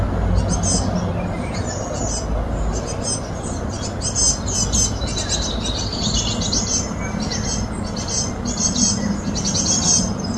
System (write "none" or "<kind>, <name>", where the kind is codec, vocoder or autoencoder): none